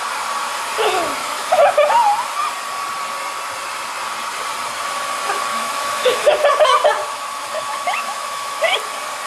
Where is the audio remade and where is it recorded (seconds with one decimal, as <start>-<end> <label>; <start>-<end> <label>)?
0.0-1.2 recorded; 1.2-1.9 remade; 1.9-5.5 recorded; 5.5-6.5 remade; 6.5-7.0 recorded; 7.0-8.6 remade; 8.6-9.3 recorded